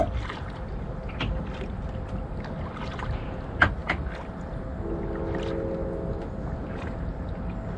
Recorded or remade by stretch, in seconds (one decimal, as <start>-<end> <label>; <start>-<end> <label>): 0.0-7.8 recorded